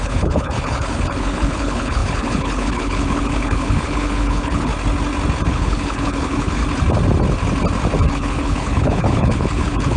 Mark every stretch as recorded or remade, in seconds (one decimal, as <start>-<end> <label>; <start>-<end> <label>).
0.0-4.7 remade; 4.7-5.5 recorded; 5.5-6.6 remade; 6.6-8.1 recorded; 8.1-10.0 remade